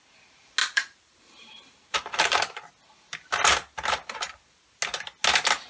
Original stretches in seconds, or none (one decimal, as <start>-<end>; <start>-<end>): 0.0-0.6; 2.6-5.7

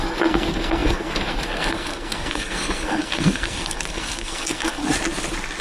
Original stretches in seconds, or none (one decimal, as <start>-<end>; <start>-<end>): 4.8-5.6

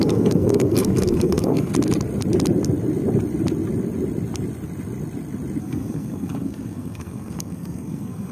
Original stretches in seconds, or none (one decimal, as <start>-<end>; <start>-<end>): 1.7-5.6

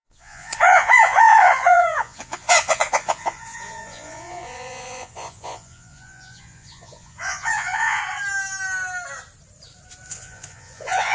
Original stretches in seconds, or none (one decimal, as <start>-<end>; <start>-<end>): 8.0-10.1

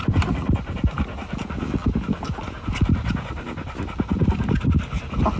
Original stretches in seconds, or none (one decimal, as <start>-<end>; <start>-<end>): 0.0-5.4

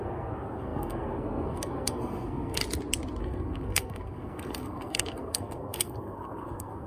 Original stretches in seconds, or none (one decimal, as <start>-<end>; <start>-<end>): 2.6-3.2

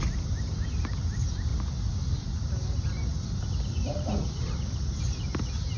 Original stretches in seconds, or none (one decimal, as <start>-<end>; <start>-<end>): 0.0-5.8